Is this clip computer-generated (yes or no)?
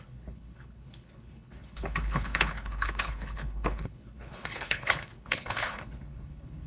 yes